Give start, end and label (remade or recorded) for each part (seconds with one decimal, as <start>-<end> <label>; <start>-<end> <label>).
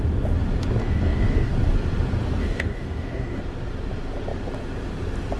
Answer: 0.0-0.8 recorded; 0.8-1.5 remade; 1.5-2.4 recorded; 2.4-3.4 remade; 3.4-5.4 recorded